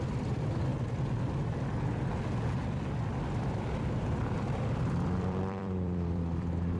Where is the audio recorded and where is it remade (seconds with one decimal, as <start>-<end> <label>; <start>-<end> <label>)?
0.0-0.7 remade; 0.7-3.4 recorded; 3.4-6.8 remade

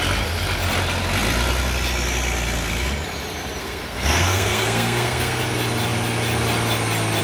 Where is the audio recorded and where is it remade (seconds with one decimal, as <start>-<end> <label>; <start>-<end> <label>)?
0.0-3.6 recorded; 3.6-5.4 remade; 5.4-7.2 recorded

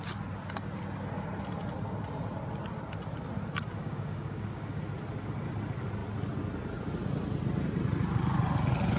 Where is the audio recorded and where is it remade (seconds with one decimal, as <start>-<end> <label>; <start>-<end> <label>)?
0.0-3.8 recorded; 3.8-4.8 remade; 4.8-9.0 recorded

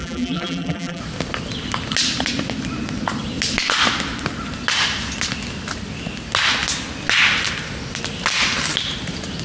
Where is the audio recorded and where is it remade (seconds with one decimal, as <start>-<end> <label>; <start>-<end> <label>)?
0.0-1.0 remade; 1.0-9.4 recorded

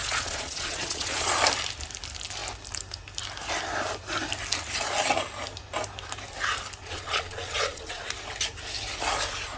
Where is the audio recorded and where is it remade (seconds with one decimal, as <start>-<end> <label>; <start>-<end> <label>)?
0.0-1.4 remade; 1.4-6.8 recorded; 6.8-8.0 remade; 8.0-9.6 recorded